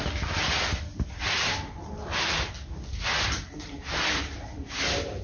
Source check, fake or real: real